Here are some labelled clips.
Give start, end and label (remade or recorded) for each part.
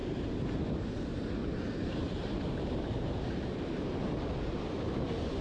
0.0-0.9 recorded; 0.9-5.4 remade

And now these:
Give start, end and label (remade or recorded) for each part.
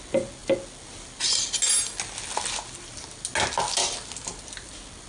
0.0-5.1 recorded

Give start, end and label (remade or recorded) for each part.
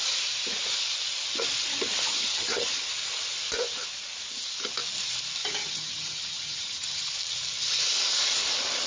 0.0-2.3 recorded; 2.3-2.9 remade; 2.9-5.6 recorded; 5.6-7.1 remade; 7.1-8.9 recorded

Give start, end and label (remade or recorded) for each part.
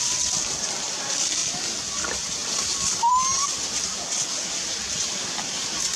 0.0-1.4 remade; 1.4-1.9 recorded; 1.9-2.4 remade; 2.4-6.0 recorded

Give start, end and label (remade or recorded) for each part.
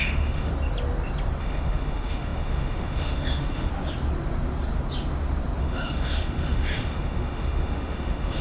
0.0-0.5 remade; 0.5-1.4 recorded; 1.4-3.7 remade; 3.7-5.6 recorded; 5.6-8.4 remade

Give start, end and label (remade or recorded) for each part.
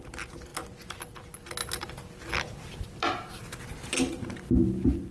0.0-5.1 recorded